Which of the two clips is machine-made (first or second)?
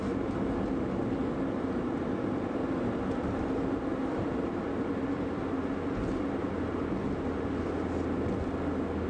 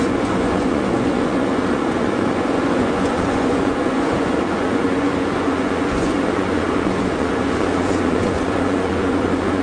second